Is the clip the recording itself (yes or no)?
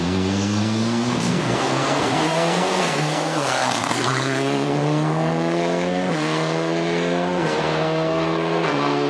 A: no